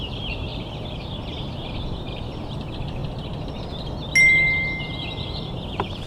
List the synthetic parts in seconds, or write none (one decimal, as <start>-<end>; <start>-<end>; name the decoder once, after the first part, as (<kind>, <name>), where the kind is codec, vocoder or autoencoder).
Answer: 0.0-3.0 (vocoder, BigVGAN v2); 4.8-6.1